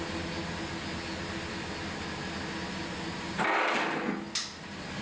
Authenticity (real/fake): real